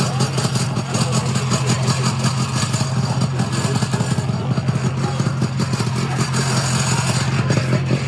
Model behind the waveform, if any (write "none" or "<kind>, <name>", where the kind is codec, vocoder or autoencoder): none